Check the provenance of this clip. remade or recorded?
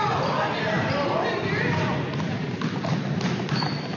recorded